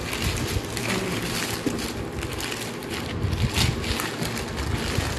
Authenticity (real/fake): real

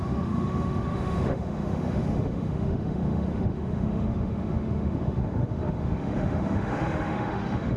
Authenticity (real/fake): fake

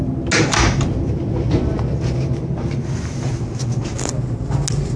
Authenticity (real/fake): real